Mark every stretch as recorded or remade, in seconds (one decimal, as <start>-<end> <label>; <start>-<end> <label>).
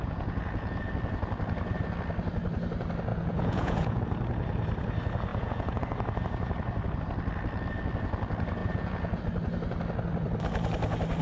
0.0-0.9 remade; 0.9-3.1 recorded; 3.1-4.0 remade; 4.0-5.3 recorded; 5.3-5.8 remade; 5.8-8.6 recorded; 8.6-9.2 remade; 9.2-11.2 recorded